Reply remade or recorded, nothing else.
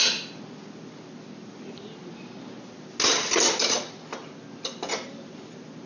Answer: recorded